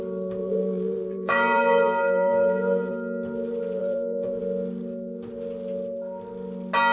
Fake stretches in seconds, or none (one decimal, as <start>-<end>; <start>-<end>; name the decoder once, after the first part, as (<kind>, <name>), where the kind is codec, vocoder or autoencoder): 0.4-2.9 (vocoder, BigVGAN v2); 3.8-4.4